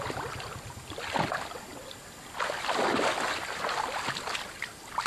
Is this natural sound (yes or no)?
yes